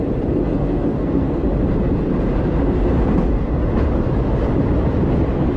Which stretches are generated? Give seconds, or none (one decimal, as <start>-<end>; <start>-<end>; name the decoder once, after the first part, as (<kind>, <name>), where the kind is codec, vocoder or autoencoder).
0.6-1.4 (codec, SNAC)